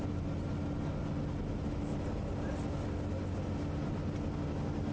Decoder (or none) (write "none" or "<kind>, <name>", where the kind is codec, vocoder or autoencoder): none